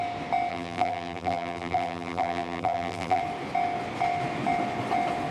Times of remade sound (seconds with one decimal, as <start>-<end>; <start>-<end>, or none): 0.5-3.2

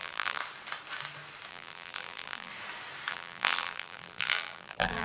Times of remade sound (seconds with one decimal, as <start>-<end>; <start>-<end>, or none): 0.0-0.4; 1.5-2.5; 3.1-5.0

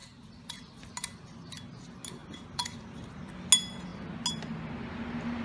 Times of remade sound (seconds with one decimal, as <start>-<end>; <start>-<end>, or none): 0.0-0.9; 2.2-3.3

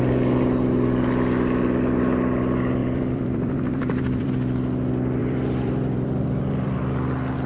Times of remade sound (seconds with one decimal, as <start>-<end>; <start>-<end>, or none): 2.8-4.3; 5.2-6.8

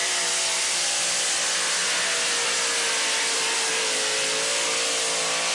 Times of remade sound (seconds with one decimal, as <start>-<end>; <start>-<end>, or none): none

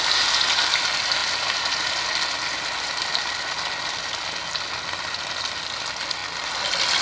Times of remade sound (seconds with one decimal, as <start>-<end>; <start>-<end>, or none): 0.0-1.2; 5.4-6.2

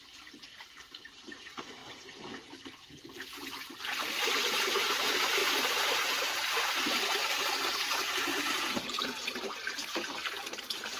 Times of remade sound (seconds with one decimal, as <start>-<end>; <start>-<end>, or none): 0.0-1.8; 4.6-11.0